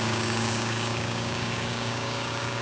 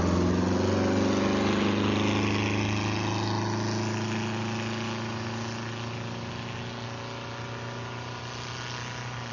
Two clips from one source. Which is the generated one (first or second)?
first